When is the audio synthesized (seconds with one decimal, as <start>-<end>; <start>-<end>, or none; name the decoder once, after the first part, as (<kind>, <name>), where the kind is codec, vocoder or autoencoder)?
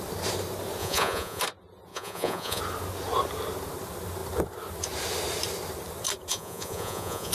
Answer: 0.8-1.4 (vocoder, Vocos); 1.9-2.6; 6.3-7.3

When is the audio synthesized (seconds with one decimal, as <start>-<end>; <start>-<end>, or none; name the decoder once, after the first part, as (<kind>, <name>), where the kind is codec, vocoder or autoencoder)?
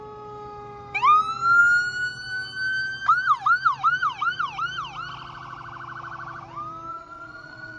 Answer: 6.9-7.8 (vocoder, Vocos)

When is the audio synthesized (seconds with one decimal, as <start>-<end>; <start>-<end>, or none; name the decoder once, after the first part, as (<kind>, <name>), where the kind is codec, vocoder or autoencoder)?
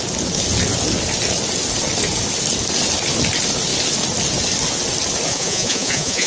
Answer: 5.3-6.3 (vocoder, Vocos)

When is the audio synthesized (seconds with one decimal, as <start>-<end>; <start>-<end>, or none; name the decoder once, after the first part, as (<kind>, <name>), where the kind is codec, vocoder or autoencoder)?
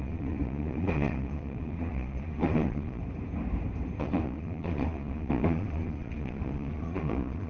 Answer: 0.0-3.0 (vocoder, Vocos); 4.0-7.5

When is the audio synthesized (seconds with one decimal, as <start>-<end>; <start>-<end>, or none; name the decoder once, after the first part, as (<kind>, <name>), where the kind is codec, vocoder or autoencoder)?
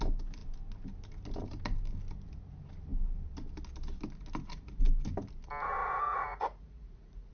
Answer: 5.8-7.3 (vocoder, Vocos)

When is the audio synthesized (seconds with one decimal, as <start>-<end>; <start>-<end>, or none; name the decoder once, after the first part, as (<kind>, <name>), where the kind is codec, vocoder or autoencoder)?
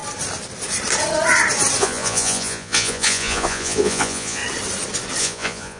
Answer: 1.8-4.4 (vocoder, Vocos); 5.2-5.8